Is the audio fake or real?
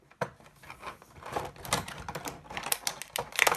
real